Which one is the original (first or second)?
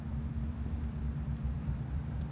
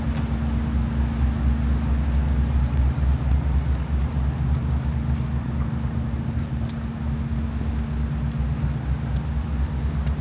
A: second